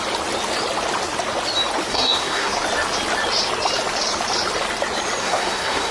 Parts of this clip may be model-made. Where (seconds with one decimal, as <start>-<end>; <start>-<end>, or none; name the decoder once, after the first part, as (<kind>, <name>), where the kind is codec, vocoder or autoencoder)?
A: 1.9-2.5 (codec, SNAC); 5.2-5.9